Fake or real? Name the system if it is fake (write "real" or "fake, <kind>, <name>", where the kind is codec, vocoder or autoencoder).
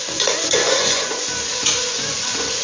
fake, vocoder, Vocos